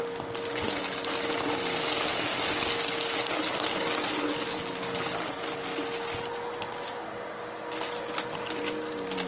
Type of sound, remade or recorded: recorded